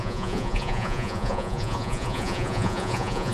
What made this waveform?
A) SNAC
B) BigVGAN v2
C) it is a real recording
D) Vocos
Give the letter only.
D